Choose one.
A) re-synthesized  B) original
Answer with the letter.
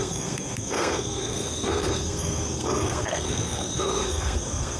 A